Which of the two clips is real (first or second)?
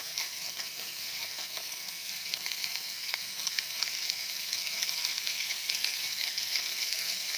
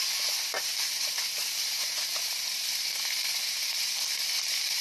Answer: second